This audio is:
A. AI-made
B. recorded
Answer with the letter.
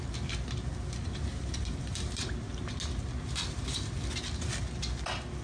B